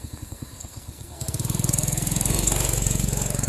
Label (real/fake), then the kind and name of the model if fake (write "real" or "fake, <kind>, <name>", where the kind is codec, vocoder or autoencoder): fake, codec, SNAC